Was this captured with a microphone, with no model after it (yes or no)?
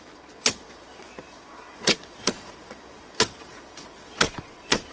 no